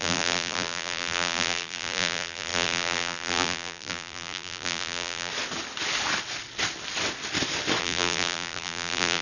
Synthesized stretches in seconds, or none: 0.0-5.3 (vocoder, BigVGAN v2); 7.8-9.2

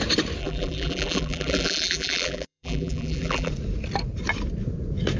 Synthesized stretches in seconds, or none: 0.4-3.5 (vocoder, BigVGAN v2)

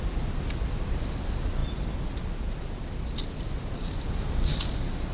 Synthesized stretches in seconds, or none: none

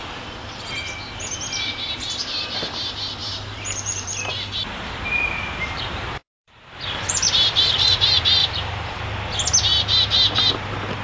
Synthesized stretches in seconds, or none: 3.2-8.0 (vocoder, BigVGAN v2); 8.4-9.0

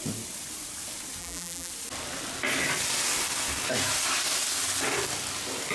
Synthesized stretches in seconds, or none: 1.2-1.7 (vocoder, BigVGAN v2)

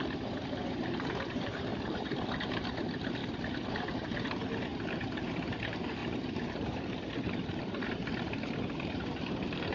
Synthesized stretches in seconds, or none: 0.0-1.7 (vocoder, BigVGAN v2); 2.4-3.2; 3.7-9.7

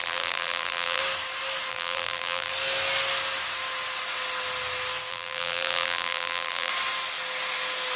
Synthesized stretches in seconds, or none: 0.0-1.0 (vocoder, BigVGAN v2); 1.7-2.5; 5.1-6.7